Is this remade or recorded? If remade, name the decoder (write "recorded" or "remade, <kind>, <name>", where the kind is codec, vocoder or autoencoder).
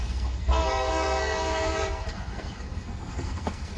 remade, codec, SNAC